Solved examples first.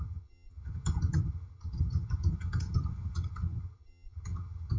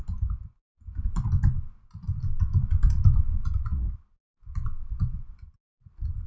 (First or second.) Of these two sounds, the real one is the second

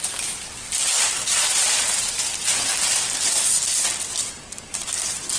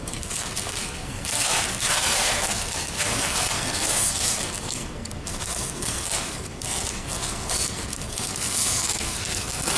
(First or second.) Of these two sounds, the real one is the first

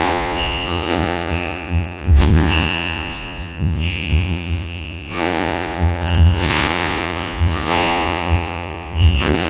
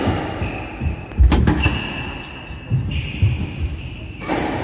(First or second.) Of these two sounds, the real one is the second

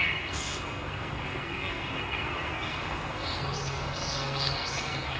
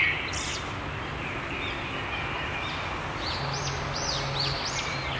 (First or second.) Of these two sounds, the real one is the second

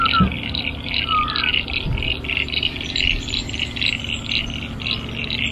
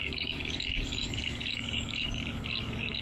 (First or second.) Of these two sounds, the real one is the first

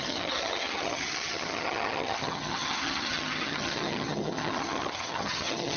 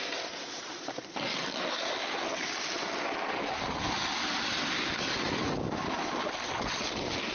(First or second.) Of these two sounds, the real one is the second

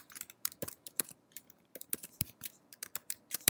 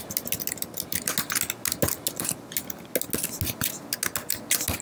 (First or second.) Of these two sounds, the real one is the second